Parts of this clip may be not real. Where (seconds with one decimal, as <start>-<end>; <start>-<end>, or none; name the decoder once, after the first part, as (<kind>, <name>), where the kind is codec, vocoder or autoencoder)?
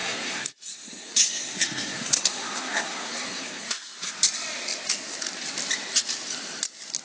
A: 0.0-4.1 (codec, SNAC)